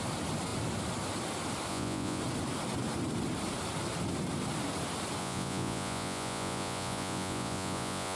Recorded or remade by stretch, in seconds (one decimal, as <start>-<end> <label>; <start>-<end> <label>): 0.0-1.7 recorded; 1.7-2.2 remade; 2.2-5.2 recorded; 5.2-8.2 remade